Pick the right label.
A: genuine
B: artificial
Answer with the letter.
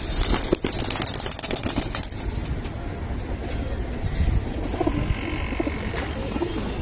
A